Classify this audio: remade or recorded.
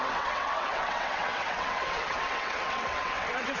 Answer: remade